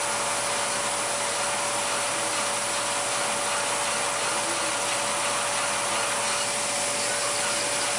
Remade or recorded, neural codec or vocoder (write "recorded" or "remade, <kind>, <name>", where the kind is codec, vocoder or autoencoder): recorded